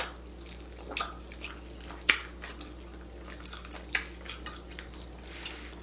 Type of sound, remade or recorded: recorded